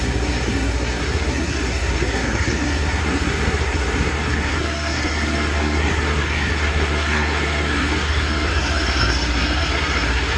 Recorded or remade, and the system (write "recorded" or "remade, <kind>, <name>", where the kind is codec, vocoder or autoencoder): remade, codec, SNAC